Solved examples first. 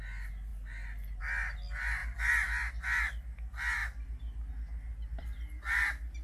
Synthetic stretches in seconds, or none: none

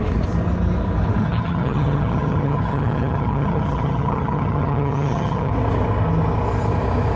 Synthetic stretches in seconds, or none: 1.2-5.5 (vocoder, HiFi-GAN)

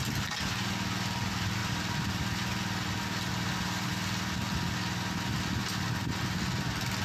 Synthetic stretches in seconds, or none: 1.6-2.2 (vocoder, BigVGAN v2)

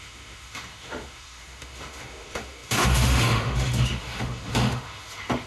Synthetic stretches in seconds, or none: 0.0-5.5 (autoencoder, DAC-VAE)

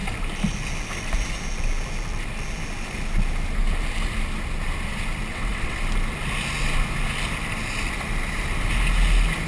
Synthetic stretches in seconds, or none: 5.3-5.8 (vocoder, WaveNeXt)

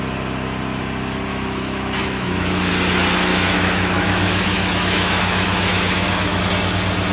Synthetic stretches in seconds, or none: 1.3-2.7 (autoencoder, DAC-VAE); 3.3-6.4

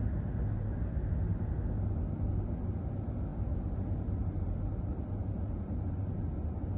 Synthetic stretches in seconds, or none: none